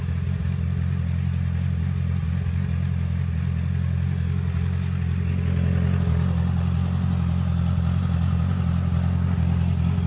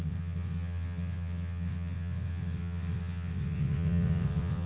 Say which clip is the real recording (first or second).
first